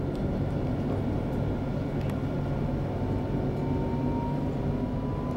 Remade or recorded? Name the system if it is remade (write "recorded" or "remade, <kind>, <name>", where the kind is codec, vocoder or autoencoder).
recorded